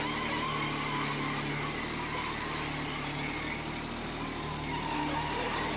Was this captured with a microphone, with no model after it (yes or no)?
yes